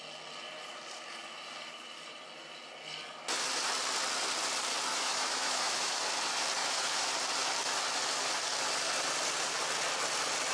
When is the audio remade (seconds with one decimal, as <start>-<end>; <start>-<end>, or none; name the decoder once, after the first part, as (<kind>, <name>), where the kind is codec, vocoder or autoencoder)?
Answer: 4.9-6.0 (autoencoder, DAC-VAE); 6.6-7.1